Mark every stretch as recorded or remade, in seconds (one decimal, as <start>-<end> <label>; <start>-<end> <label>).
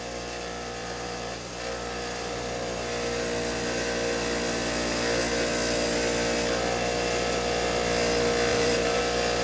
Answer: 0.0-0.8 recorded; 0.8-1.5 remade; 1.5-8.5 recorded; 8.5-9.0 remade; 9.0-9.4 recorded